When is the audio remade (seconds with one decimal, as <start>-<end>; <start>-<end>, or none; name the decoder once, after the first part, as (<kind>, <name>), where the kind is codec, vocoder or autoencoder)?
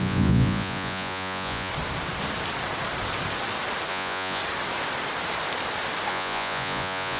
0.0-1.7 (vocoder, Vocos); 3.9-4.4; 6.1-7.2